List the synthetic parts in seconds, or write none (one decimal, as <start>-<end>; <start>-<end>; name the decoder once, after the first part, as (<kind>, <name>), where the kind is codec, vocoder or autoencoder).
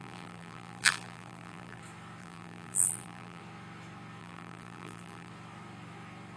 0.0-1.8 (vocoder, BigVGAN v2); 2.2-3.4; 4.2-5.3